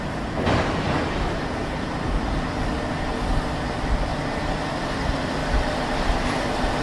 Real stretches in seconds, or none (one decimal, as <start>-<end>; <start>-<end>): 0.0-6.8